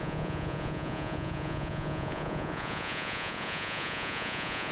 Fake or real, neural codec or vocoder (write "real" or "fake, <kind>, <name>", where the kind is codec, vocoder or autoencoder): fake, vocoder, Vocos